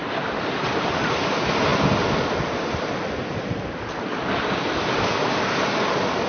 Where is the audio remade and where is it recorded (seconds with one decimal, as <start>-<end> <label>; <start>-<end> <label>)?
0.0-6.3 recorded